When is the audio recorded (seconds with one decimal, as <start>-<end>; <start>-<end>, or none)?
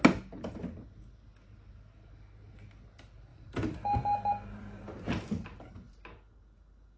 0.0-3.3; 4.3-7.0